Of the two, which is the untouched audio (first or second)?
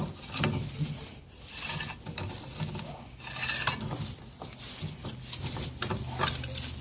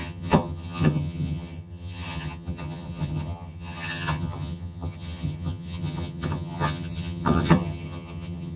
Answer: first